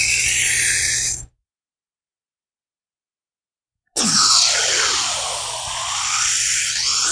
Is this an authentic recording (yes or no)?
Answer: yes